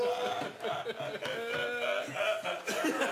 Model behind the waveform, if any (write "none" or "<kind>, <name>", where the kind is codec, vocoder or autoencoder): none